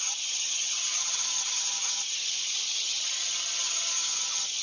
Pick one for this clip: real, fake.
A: fake